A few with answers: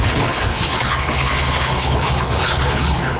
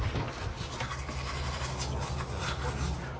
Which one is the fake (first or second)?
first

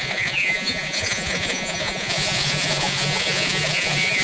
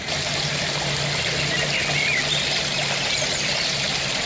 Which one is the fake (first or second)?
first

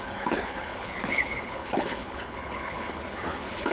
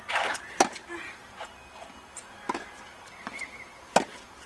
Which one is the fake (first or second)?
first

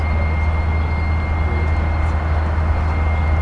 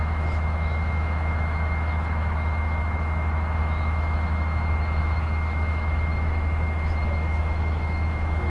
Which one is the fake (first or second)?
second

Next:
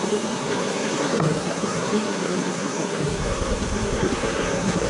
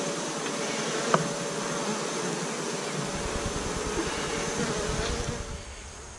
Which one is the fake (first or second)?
first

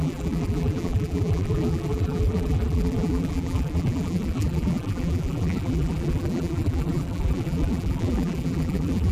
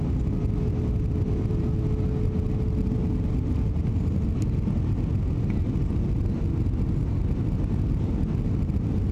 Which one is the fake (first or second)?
first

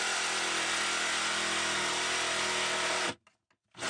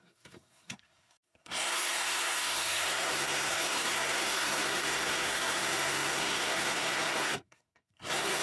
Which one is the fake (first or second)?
second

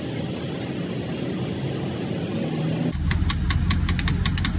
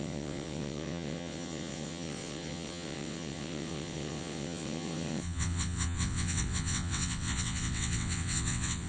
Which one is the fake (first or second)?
second